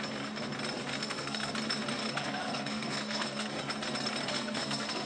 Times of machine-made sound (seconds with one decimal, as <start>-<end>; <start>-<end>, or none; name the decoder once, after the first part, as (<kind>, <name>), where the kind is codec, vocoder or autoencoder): 0.9-1.5 (codec, SNAC); 2.0-3.6; 4.3-5.1